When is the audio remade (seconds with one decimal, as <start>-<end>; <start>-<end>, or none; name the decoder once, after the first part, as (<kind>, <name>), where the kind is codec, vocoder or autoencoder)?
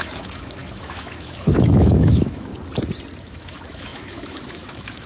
0.0-2.5 (autoencoder, DAC-VAE); 3.2-5.1